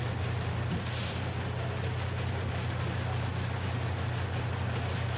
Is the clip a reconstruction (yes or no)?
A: no